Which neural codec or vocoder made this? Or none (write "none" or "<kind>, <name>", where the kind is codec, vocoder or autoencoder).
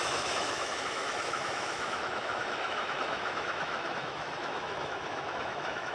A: autoencoder, DAC-VAE